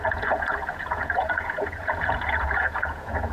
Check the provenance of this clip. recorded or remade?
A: remade